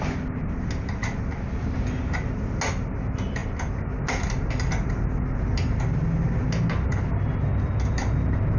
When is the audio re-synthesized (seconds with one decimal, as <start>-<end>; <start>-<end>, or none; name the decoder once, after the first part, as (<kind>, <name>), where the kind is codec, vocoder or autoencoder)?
none